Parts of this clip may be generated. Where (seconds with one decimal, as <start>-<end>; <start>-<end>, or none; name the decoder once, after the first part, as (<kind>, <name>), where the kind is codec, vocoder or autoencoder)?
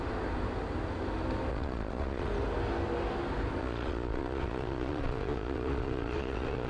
1.5-2.3 (vocoder, Vocos); 3.6-6.7